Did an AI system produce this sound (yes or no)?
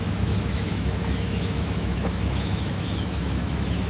yes